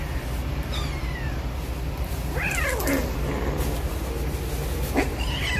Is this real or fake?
real